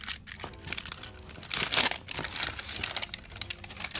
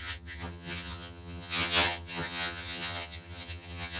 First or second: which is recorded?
first